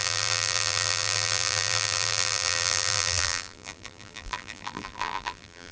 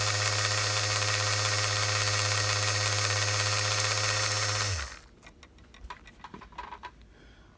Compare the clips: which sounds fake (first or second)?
first